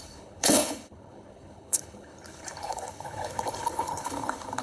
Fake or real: fake